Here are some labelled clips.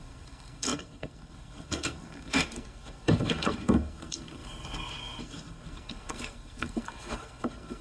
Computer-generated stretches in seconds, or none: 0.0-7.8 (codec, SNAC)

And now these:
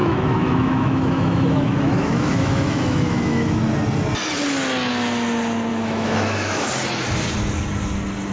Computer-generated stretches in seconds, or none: 0.0-3.6 (autoencoder, DAC-VAE); 5.7-6.7

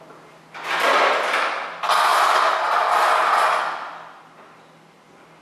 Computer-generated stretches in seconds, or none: none

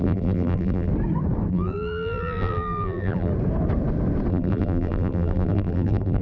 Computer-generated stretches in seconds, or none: 0.0-0.9 (vocoder, BigVGAN v2); 1.5-3.3; 4.3-6.2